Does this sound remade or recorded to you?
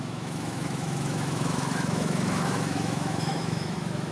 remade